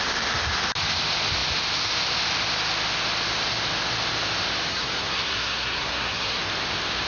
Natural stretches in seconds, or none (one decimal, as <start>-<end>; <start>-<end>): 0.0-4.7; 6.4-7.1